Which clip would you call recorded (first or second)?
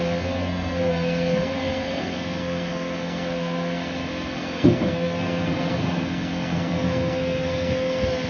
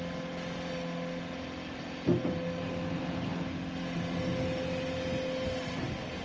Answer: second